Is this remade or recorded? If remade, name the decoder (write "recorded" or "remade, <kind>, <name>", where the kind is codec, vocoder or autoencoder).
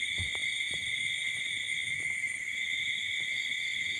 recorded